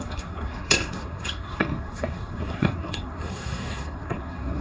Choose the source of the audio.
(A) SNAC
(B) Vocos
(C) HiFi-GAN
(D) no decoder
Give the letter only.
A